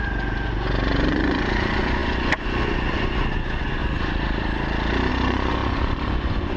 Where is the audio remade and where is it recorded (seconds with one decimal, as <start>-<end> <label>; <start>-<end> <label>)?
0.0-3.8 remade; 3.8-5.1 recorded; 5.1-6.6 remade